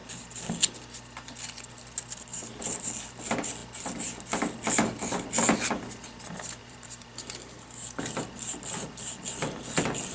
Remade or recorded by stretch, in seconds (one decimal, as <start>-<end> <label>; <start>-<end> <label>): 0.0-2.3 recorded; 2.3-2.9 remade; 2.9-6.6 recorded; 6.6-8.0 remade; 8.0-10.1 recorded